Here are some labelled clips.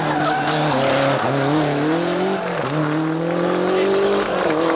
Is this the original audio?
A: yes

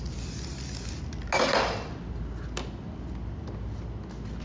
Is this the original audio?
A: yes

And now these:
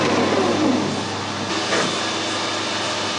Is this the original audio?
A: yes